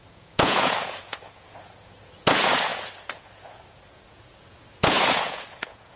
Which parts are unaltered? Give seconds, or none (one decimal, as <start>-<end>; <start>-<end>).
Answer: none